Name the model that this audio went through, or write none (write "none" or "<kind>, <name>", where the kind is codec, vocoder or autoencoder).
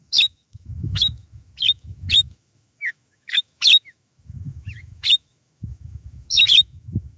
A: autoencoder, DAC-VAE